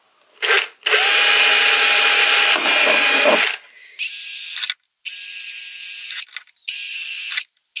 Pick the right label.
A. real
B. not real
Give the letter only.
A